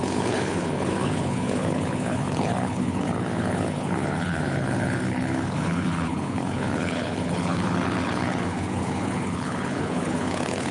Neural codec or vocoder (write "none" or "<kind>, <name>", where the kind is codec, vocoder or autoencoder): codec, HILCodec